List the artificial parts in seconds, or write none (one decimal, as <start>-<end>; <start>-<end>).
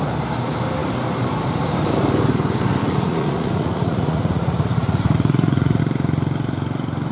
2.8-5.8